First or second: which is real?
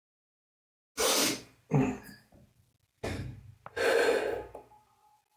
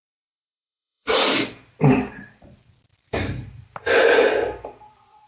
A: first